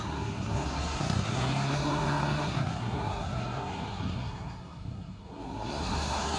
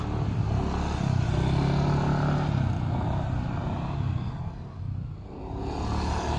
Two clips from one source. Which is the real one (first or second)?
second